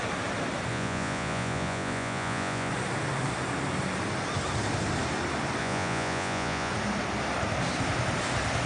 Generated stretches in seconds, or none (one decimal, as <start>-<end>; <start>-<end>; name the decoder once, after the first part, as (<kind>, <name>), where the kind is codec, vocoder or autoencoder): 0.7-2.7 (vocoder, Vocos); 5.6-6.7